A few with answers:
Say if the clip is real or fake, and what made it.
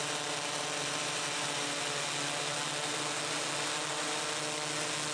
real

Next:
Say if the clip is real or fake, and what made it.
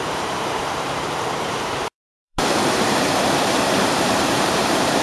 fake, vocoder, BigVGAN v2